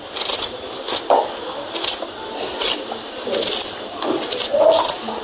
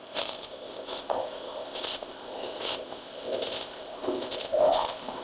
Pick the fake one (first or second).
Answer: second